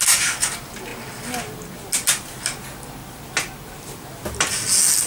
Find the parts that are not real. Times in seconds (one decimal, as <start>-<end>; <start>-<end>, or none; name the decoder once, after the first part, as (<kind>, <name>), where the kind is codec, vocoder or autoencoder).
none